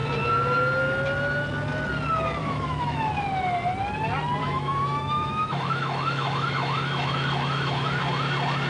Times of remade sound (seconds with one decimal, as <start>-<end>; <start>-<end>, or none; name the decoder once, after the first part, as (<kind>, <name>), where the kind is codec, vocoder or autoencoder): 2.4-3.1 (autoencoder, DAC-VAE); 4.4-8.0